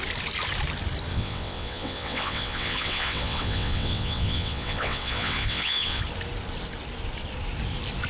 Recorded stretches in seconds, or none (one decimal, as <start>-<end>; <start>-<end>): 0.0-1.1; 6.0-8.1